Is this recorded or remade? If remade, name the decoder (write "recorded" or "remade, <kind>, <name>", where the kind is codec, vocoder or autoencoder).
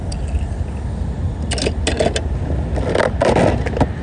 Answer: recorded